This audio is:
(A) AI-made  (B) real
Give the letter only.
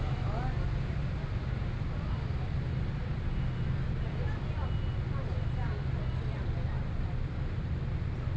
B